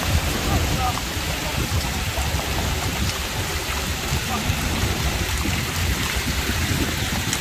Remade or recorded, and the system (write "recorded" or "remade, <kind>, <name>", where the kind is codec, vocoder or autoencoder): remade, vocoder, BigVGAN v2